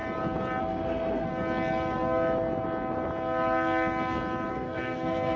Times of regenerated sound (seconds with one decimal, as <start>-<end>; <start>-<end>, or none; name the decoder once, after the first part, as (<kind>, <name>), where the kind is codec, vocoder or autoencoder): 0.6-1.3 (codec, SNAC); 4.5-5.4